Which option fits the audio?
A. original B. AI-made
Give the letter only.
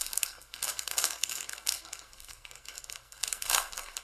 B